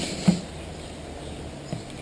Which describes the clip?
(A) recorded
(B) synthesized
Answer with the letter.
A